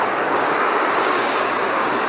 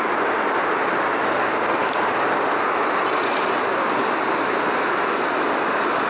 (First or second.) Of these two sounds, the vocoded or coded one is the first